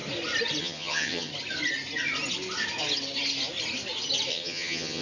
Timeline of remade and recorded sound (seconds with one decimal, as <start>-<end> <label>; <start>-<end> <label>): 0.0-0.6 recorded; 0.6-1.3 remade; 1.3-4.3 recorded; 4.3-5.0 remade